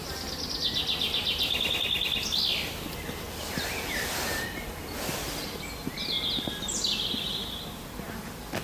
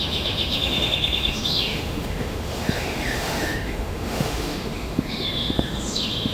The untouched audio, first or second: first